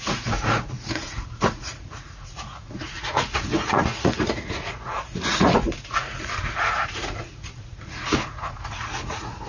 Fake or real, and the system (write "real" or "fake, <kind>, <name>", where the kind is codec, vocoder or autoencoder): fake, vocoder, Vocos